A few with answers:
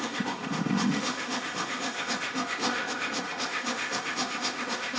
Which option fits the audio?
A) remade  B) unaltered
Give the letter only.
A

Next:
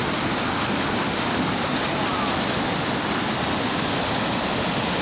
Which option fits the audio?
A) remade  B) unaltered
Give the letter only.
B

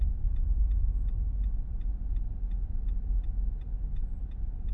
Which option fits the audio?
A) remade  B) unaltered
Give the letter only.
B